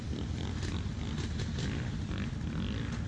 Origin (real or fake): real